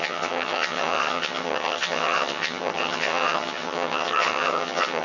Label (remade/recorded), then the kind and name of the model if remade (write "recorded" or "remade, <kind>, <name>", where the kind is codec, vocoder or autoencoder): remade, vocoder, HiFi-GAN